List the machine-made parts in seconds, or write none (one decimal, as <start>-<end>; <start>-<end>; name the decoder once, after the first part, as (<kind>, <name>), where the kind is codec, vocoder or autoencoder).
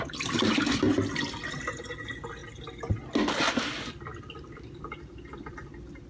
none